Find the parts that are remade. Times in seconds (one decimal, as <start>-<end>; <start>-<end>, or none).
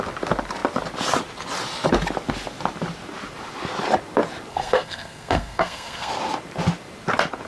4.5-6.1